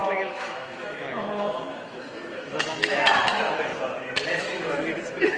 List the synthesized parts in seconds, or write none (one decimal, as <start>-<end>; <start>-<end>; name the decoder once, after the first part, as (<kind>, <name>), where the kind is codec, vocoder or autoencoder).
0.0-3.7 (autoencoder, DAC-VAE); 4.4-5.4